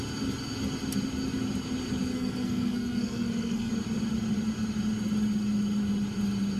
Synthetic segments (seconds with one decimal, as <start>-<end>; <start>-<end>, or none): 2.1-3.7